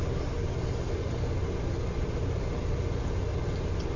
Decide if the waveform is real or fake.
real